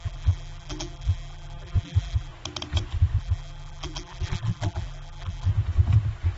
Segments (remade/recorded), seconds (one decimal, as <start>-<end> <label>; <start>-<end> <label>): 0.0-2.3 remade; 2.3-3.2 recorded; 3.2-5.5 remade; 5.5-6.4 recorded